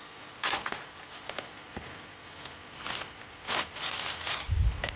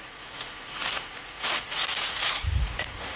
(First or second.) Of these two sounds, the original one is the first